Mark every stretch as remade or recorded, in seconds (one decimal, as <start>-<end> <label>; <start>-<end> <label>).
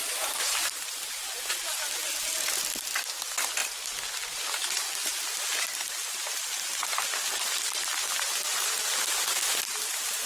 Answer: 0.0-1.2 remade; 1.2-10.3 recorded